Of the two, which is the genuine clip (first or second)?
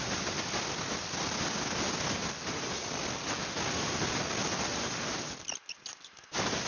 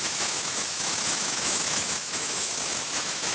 first